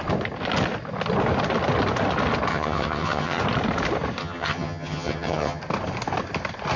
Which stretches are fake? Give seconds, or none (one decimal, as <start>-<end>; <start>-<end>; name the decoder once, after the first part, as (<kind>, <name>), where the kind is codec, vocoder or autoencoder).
2.5-3.4 (vocoder, HiFi-GAN); 4.2-5.6